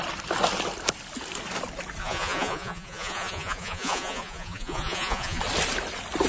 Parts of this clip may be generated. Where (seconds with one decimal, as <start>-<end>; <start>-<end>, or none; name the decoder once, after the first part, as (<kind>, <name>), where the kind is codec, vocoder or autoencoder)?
2.0-5.4 (vocoder, Vocos)